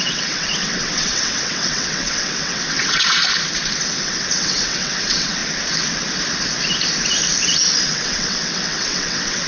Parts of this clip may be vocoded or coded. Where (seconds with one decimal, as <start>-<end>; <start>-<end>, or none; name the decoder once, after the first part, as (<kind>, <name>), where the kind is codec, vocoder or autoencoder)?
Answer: 0.0-3.2 (vocoder, WaveNeXt); 4.0-5.4; 7.4-9.5